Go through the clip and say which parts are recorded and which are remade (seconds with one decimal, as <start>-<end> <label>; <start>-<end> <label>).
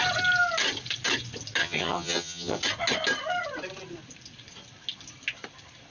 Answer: 0.0-1.6 recorded; 1.6-2.6 remade; 2.6-5.9 recorded